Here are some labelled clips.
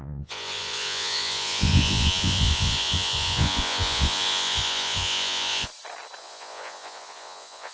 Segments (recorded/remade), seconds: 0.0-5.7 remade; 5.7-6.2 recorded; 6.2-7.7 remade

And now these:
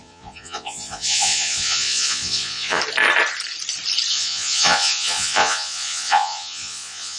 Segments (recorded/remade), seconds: 0.0-2.8 remade; 2.8-4.1 recorded; 4.1-7.2 remade

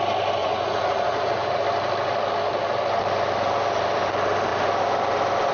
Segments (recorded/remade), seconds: 0.0-0.4 recorded; 0.4-1.6 remade; 1.6-5.5 recorded

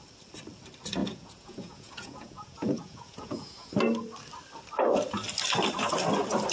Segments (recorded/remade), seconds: 0.0-1.0 recorded; 1.0-3.7 remade; 3.7-6.5 recorded